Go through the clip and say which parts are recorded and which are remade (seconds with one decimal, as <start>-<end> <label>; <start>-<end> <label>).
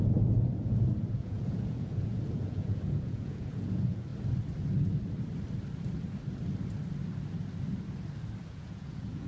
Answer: 0.0-4.1 remade; 4.1-8.5 recorded; 8.5-9.3 remade